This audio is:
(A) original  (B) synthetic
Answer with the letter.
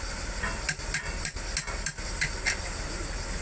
A